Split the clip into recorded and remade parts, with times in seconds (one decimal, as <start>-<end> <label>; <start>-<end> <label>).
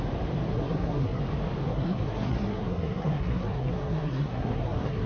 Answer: 0.0-0.5 recorded; 0.5-1.2 remade; 1.2-1.7 recorded; 1.7-5.1 remade